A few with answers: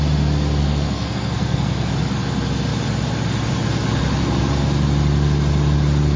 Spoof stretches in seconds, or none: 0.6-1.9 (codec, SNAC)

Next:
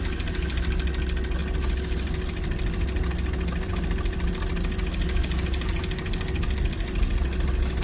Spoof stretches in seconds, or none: none

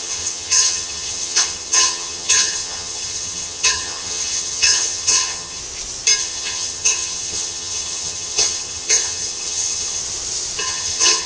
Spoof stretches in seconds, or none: 0.0-5.6 (vocoder, HiFi-GAN); 6.2-10.0; 10.6-11.3

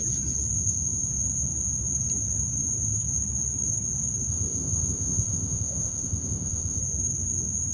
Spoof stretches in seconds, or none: 0.6-1.1 (codec, ZipCodec); 4.3-6.8